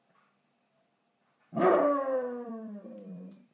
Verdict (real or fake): fake